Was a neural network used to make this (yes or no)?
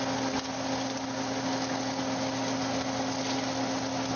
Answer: no